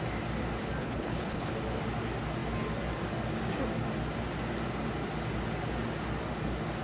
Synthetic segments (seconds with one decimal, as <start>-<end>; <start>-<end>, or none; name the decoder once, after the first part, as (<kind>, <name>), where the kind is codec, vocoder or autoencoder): 0.8-1.5 (codec, HILCodec)